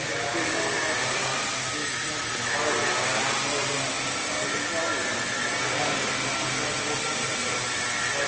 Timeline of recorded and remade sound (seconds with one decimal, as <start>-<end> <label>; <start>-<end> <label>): 0.0-1.8 recorded; 1.8-2.7 remade; 2.7-8.3 recorded